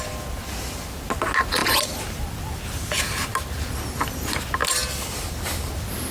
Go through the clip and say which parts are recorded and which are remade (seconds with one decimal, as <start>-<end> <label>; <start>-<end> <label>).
0.0-6.1 recorded